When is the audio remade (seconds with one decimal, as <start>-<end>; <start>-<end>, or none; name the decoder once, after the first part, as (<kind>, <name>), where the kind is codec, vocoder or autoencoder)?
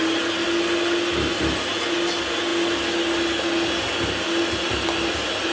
none